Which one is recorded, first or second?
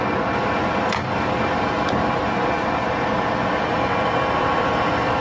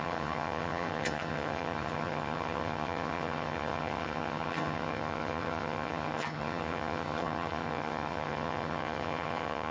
first